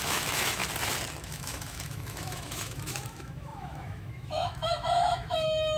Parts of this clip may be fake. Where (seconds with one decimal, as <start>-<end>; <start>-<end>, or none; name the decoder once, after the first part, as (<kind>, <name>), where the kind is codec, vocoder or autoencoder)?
0.0-0.6 (autoencoder, DAC-VAE); 1.2-5.8